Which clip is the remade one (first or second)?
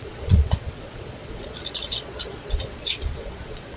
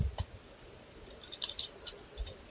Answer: first